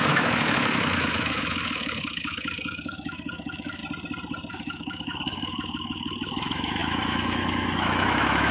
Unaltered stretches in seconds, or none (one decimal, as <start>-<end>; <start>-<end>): 3.8-4.5

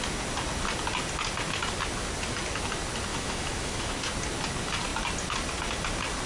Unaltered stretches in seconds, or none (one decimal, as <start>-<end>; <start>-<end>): 0.0-3.1; 3.9-6.3